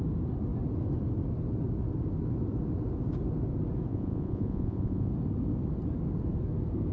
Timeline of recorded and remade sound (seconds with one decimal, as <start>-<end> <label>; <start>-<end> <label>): 0.0-3.9 recorded; 3.9-5.1 remade; 5.1-6.9 recorded